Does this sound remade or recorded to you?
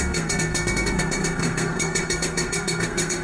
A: remade